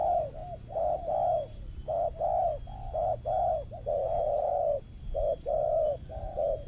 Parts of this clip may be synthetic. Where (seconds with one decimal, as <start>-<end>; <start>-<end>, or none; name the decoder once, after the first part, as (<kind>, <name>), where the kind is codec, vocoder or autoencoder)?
none